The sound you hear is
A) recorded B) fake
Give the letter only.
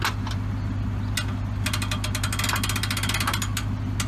A